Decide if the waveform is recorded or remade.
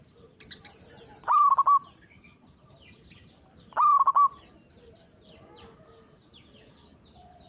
recorded